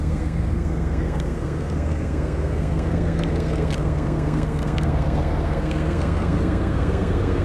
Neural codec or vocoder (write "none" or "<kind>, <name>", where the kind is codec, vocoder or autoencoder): codec, SNAC